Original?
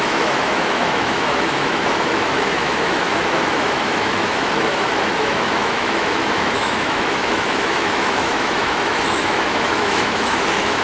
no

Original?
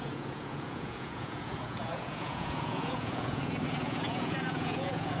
no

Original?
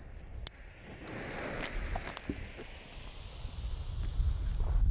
yes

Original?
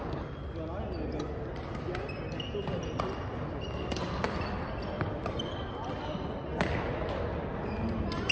yes